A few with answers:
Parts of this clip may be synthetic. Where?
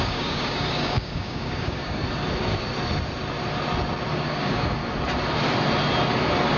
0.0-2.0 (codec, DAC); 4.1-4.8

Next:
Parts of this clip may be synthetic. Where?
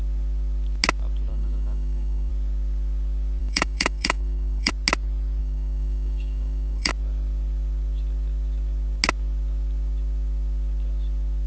1.3-2.3 (codec, DAC); 3.4-4.7; 5.4-6.9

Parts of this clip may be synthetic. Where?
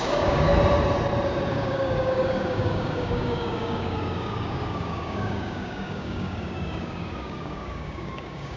0.0-0.5 (codec, DAC); 1.5-8.6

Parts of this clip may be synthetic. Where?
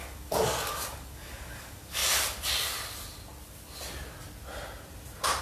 0.0-2.0 (codec, DAC)